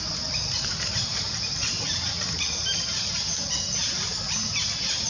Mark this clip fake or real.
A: real